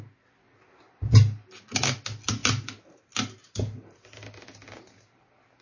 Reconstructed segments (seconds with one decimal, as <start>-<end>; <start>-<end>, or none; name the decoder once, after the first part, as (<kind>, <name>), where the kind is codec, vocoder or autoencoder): none